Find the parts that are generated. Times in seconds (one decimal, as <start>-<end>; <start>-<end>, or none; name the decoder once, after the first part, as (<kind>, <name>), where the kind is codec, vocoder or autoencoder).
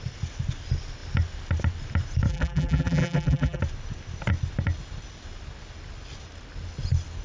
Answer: 2.3-3.6 (vocoder, BigVGAN v2)